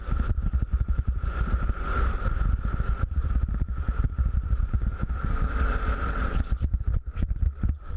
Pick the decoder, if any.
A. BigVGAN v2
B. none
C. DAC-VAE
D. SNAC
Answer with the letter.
B